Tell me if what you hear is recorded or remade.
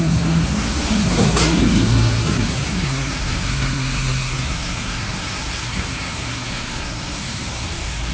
remade